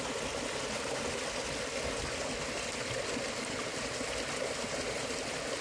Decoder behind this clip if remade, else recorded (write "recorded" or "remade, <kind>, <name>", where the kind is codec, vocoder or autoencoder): recorded